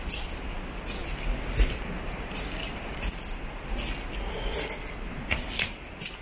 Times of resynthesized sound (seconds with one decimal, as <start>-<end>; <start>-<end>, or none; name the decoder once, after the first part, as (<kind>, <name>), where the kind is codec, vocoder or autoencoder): none